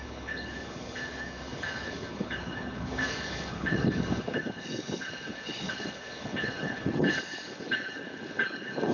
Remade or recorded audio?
remade